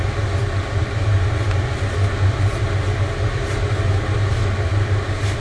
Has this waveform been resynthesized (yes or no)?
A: no